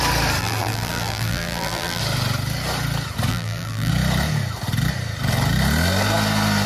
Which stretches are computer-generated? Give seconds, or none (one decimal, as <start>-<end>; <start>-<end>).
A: 0.4-2.0; 3.3-3.9